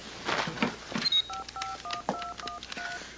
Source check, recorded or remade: recorded